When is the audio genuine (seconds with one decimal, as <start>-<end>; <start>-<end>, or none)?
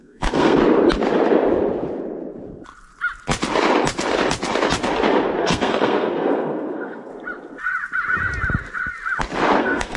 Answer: 0.6-5.4; 7.1-9.6